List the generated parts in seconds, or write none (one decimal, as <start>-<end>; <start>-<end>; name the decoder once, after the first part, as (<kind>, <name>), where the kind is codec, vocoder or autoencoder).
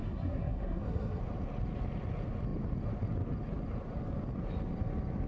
0.0-1.2 (codec, SNAC)